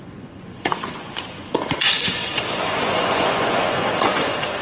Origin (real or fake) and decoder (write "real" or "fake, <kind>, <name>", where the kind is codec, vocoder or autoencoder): fake, vocoder, Vocos